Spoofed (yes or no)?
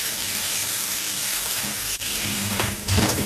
yes